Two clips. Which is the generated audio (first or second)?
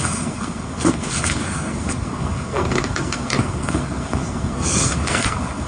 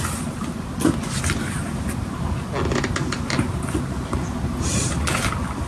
first